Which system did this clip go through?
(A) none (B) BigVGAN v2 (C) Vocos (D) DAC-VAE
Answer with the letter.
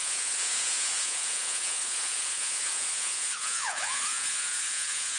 C